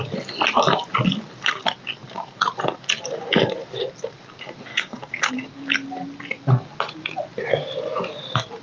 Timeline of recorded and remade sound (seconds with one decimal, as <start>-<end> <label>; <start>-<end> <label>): 0.0-4.7 recorded; 4.7-5.3 remade; 5.3-8.6 recorded